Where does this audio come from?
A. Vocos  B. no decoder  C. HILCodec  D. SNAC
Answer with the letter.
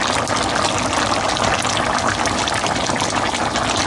B